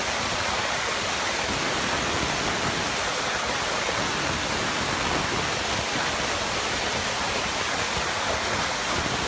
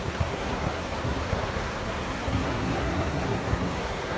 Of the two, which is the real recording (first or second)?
first